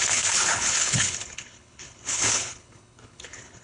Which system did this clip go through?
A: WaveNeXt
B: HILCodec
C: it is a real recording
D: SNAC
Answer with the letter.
B